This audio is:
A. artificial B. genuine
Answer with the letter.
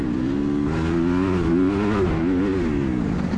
B